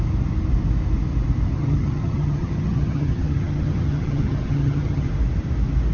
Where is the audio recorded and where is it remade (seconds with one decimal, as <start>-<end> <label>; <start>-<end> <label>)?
0.0-1.6 recorded; 1.6-5.1 remade; 5.1-5.9 recorded